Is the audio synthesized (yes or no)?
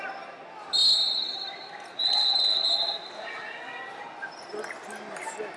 no